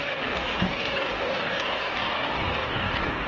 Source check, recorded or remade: remade